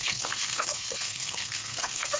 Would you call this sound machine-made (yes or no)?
yes